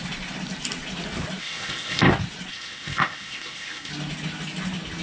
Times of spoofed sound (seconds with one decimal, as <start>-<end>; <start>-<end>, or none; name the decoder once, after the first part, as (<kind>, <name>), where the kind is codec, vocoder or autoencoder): 1.4-2.1 (codec, ZipCodec); 2.5-3.9